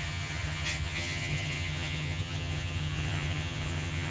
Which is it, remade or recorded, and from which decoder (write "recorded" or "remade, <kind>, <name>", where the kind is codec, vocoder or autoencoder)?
remade, vocoder, HiFi-GAN